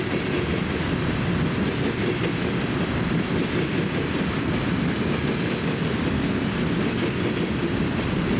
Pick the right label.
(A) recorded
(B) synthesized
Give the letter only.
A